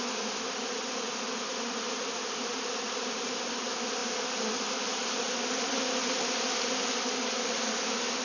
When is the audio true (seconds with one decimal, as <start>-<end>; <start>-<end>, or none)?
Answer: 0.0-8.2

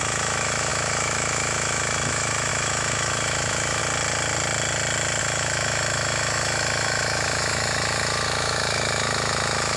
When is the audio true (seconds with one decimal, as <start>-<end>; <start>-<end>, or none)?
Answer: 3.8-5.2

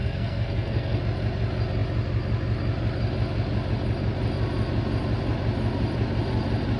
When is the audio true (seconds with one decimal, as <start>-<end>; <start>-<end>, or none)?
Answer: 1.0-6.8

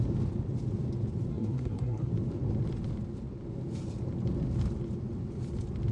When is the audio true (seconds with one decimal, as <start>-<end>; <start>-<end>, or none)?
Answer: 0.0-1.3; 2.1-5.9

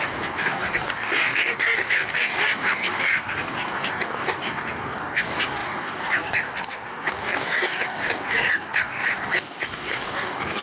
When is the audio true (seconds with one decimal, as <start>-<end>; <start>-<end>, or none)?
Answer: none

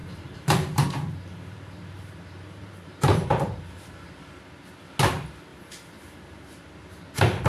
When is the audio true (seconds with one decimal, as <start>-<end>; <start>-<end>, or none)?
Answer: 4.2-5.5; 7.0-7.5

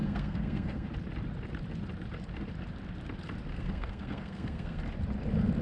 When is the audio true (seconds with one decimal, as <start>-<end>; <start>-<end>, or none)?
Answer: 0.9-3.5; 4.8-5.6

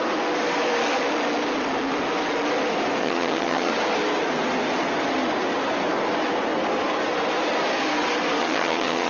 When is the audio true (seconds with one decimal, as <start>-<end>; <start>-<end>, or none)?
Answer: 0.0-3.0; 3.7-8.4